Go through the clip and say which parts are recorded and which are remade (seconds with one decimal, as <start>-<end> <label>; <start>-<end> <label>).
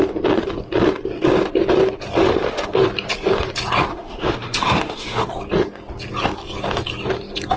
0.0-2.2 recorded; 2.2-2.8 remade; 2.8-3.9 recorded; 3.9-5.3 remade; 5.3-7.6 recorded